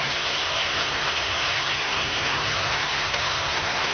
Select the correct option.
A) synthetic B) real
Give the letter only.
A